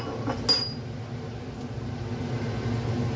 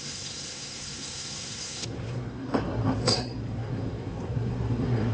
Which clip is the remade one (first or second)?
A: second